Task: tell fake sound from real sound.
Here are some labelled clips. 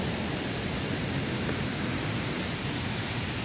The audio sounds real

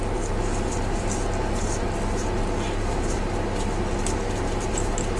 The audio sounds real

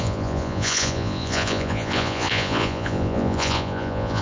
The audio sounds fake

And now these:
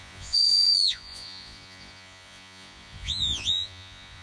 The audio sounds fake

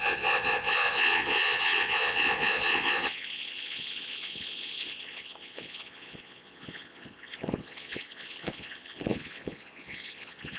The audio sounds fake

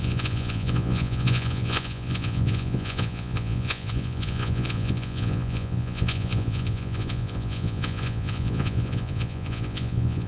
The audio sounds fake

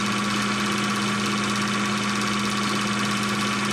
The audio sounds real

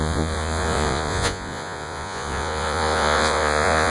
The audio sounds fake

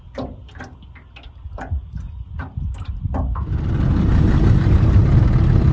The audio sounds real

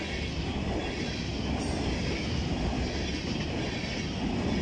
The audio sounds real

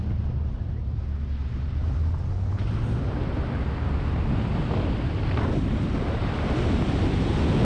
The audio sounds real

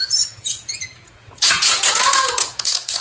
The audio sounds fake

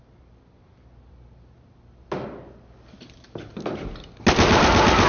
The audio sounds real